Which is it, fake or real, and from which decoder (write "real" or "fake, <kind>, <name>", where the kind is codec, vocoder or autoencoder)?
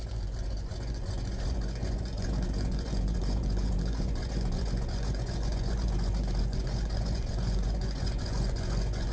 fake, vocoder, Vocos